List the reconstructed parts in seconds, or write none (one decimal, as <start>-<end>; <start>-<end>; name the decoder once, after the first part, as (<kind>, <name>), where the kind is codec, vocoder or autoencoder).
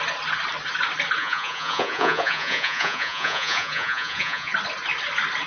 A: 1.2-4.5 (vocoder, Vocos)